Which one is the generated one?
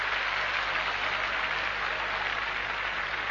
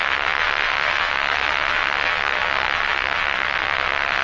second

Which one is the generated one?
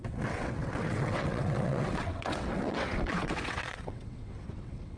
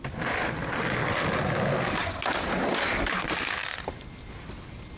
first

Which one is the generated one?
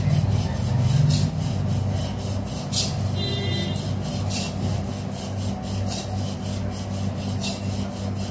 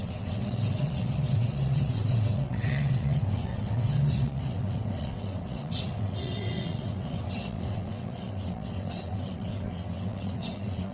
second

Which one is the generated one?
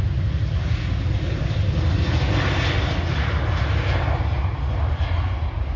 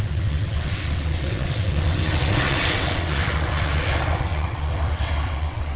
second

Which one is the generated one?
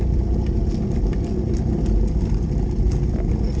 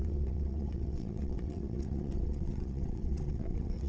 second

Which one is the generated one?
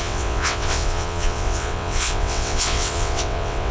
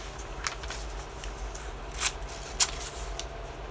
first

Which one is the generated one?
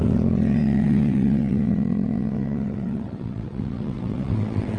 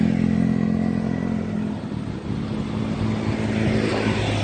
first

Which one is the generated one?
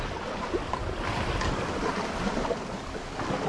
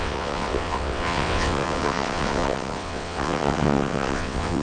second